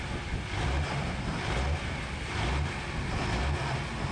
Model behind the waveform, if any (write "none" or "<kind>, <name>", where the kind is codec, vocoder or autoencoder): none